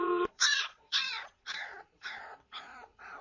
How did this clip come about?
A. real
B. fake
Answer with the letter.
B